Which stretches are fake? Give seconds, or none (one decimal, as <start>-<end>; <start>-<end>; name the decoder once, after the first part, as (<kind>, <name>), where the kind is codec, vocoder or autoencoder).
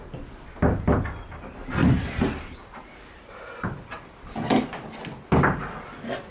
1.8-3.6 (vocoder, BigVGAN v2)